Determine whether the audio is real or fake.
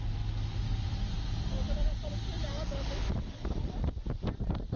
real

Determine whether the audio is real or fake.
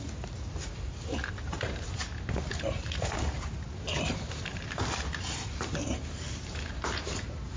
fake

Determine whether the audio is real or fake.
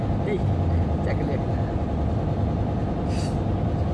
real